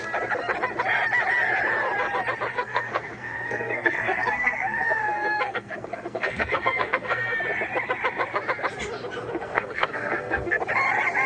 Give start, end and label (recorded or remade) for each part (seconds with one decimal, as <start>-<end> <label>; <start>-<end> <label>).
0.0-2.5 recorded; 2.5-7.4 remade; 7.4-9.3 recorded; 9.3-10.6 remade; 10.6-11.3 recorded